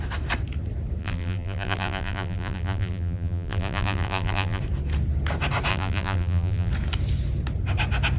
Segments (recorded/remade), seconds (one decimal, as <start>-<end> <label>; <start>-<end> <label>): 0.0-1.0 recorded; 1.0-4.6 remade; 4.6-5.7 recorded; 5.7-6.7 remade; 6.7-8.2 recorded